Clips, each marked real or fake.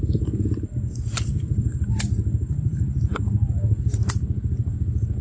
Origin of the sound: real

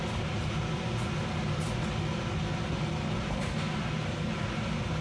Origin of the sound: real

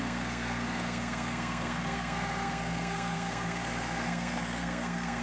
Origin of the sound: fake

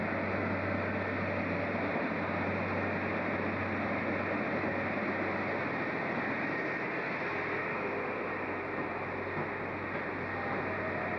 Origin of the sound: real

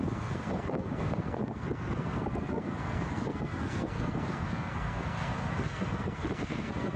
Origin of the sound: fake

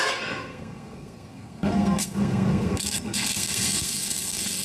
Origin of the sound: fake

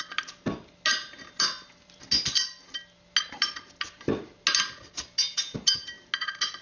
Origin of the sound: real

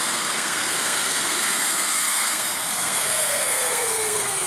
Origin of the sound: fake